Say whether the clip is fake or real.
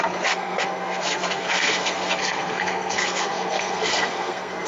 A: fake